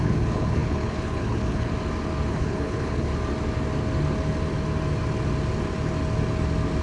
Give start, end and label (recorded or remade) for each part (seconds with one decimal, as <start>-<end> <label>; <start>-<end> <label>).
0.0-1.7 remade; 1.7-2.3 recorded; 2.3-3.1 remade; 3.1-6.8 recorded

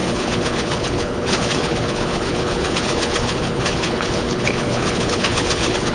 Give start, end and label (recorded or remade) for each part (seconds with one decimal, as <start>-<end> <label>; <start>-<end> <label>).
0.0-5.9 remade

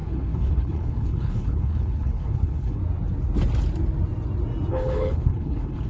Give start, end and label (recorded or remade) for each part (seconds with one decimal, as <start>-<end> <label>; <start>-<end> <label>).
0.0-2.8 remade; 2.8-4.7 recorded; 4.7-5.9 remade

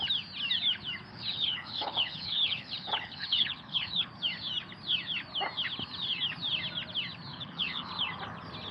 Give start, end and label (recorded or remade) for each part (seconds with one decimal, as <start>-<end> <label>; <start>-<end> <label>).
0.0-1.1 recorded; 1.1-4.1 remade; 4.1-7.3 recorded; 7.3-7.9 remade; 7.9-8.7 recorded